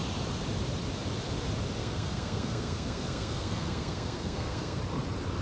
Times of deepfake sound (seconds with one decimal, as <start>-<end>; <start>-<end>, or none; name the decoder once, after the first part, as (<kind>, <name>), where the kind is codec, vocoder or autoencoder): 1.8-4.8 (codec, SNAC)